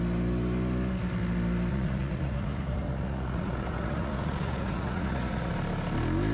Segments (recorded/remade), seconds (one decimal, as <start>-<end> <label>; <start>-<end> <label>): 0.0-1.7 recorded; 1.7-5.5 remade; 5.5-6.3 recorded